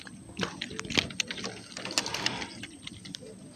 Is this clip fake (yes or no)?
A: no